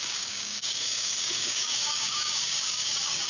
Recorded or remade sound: remade